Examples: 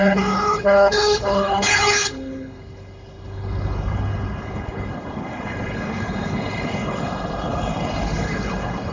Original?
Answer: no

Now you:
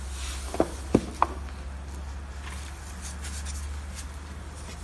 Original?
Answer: yes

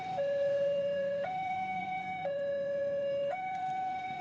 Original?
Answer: no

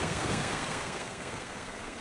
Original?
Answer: no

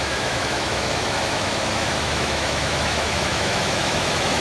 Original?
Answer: no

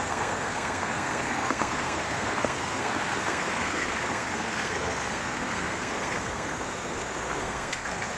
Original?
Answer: no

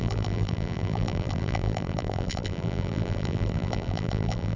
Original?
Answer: no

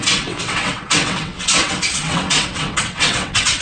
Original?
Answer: no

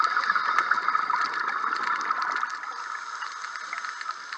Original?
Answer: yes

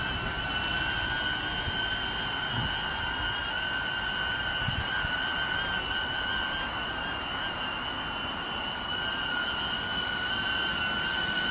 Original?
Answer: yes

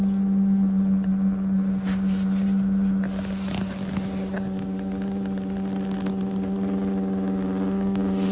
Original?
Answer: yes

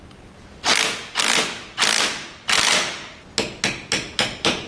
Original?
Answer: yes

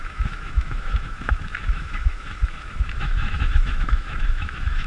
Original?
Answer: no